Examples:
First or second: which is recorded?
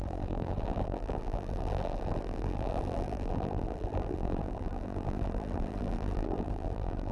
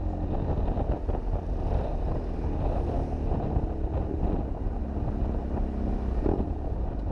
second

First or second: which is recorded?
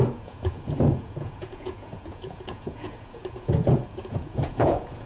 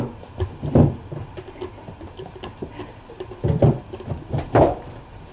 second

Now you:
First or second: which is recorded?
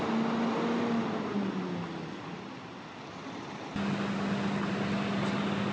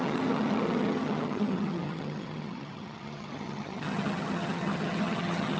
first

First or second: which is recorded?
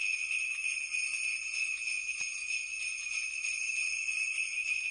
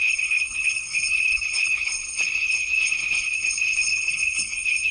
first